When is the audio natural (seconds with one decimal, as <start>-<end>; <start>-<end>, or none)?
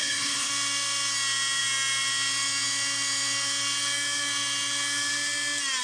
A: 0.5-5.8